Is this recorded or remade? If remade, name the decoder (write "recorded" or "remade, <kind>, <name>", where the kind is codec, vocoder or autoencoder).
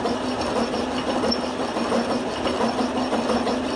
recorded